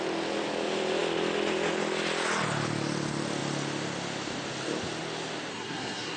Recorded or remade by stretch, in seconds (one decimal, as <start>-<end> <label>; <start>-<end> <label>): 0.0-5.5 recorded; 5.5-6.2 remade